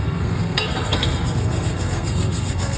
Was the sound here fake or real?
fake